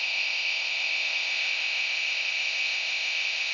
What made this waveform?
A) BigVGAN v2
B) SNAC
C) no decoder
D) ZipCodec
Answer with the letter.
D